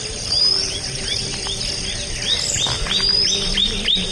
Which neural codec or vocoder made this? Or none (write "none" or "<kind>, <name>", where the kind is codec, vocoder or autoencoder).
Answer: none